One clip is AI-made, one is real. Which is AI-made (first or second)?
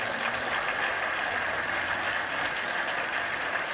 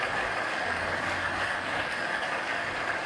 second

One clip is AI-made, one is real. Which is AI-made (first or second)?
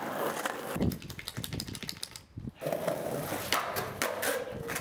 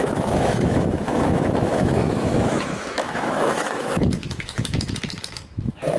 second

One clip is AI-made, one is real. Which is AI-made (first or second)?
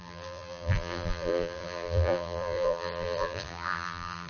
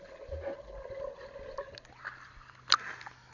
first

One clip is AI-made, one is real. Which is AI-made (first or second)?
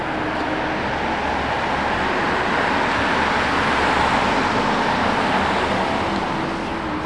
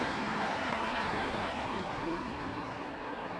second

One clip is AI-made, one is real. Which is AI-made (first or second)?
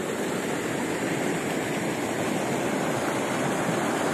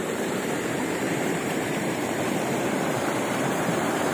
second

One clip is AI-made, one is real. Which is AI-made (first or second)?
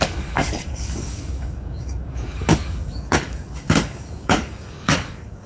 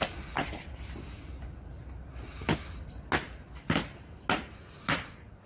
first